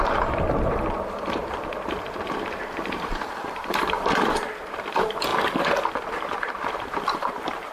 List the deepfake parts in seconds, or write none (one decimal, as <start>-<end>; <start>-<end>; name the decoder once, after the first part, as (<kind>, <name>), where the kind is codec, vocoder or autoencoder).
0.0-5.3 (vocoder, BigVGAN v2); 6.6-7.7